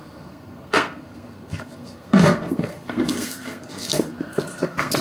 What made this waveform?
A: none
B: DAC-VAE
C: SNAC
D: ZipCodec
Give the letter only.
C